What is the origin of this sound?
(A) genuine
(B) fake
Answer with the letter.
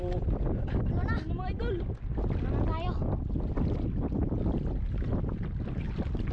A